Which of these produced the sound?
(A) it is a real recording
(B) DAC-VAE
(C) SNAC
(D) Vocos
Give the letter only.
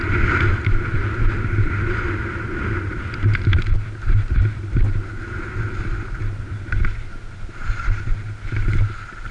A